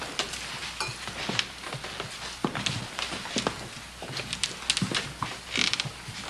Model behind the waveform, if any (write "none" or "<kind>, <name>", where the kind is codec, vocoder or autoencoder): none